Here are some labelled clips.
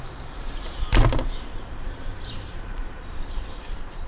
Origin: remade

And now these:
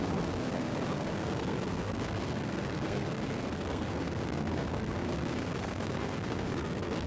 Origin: remade